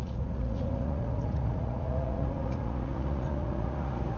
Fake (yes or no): yes